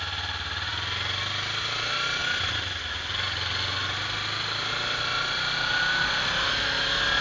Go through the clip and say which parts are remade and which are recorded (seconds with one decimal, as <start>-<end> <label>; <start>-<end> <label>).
0.0-7.2 recorded